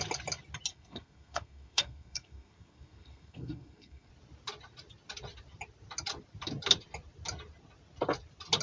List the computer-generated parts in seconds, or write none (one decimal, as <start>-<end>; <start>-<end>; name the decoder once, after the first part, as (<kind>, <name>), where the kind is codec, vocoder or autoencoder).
0.7-4.1 (codec, SNAC)